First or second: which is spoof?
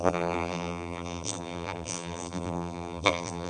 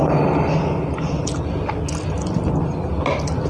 first